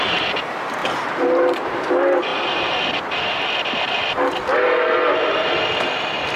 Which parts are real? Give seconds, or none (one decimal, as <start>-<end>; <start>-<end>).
0.0-0.8; 1.9-6.4